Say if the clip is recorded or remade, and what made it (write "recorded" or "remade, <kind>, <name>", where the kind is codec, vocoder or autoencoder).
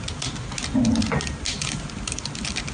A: recorded